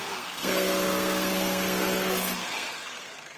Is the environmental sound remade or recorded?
remade